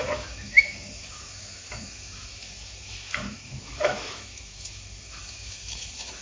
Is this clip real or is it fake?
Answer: fake